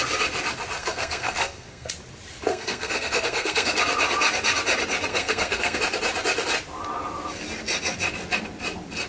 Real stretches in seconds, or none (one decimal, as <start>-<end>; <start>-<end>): 0.0-0.8; 1.9-2.5; 3.8-5.1; 5.8-9.1